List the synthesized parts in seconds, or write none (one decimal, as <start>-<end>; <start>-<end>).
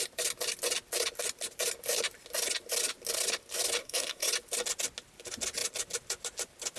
3.8-4.3